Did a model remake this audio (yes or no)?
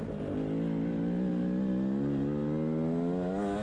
no